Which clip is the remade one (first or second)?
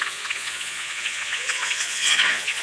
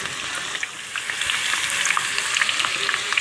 first